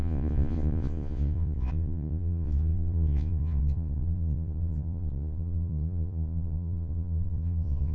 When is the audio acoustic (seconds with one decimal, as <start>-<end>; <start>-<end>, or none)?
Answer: none